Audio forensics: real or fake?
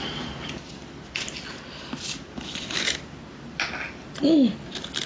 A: real